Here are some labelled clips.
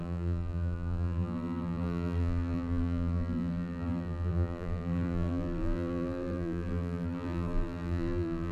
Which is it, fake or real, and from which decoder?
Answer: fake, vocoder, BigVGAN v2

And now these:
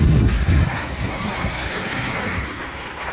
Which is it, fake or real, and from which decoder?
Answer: fake, codec, SNAC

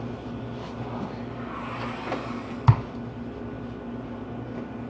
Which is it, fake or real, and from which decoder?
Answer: real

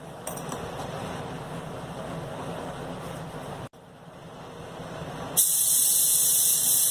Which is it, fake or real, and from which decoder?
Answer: real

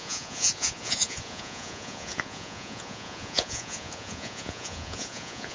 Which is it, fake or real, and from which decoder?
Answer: fake, vocoder, Vocos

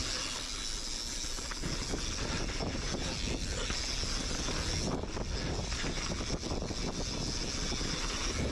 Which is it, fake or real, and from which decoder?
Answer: real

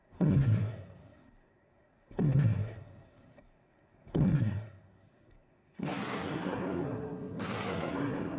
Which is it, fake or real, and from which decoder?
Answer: fake, codec, SNAC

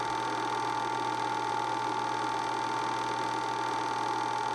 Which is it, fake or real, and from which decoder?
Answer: real